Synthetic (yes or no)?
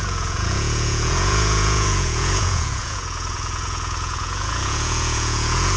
yes